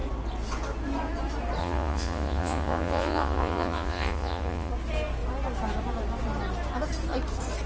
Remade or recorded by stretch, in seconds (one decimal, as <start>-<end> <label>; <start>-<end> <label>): 0.0-1.6 recorded; 1.6-4.7 remade; 4.7-7.7 recorded